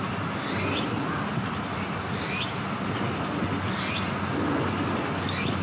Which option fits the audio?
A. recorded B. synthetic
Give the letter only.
A